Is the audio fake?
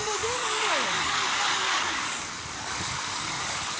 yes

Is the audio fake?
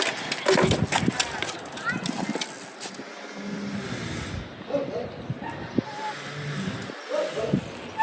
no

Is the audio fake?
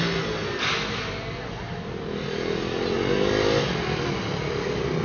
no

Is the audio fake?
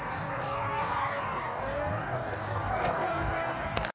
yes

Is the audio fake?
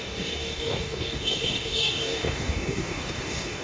yes